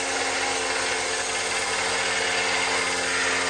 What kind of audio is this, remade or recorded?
recorded